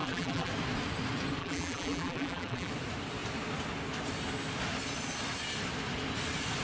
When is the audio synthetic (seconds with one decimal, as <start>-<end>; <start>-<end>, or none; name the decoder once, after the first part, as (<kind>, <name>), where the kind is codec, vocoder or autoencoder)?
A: 0.0-0.5 (vocoder, BigVGAN v2); 1.4-2.7